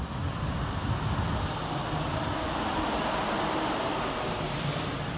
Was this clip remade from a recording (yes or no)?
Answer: no